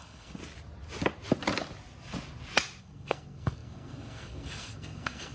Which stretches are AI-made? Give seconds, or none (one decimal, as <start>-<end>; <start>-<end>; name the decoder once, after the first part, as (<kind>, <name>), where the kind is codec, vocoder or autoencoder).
0.0-0.4 (codec, SNAC); 2.8-5.3